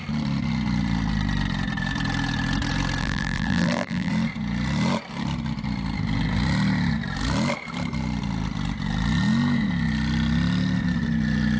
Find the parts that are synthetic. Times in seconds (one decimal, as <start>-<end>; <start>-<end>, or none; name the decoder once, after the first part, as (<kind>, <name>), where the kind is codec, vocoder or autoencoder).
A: 3.0-4.1 (vocoder, BigVGAN v2)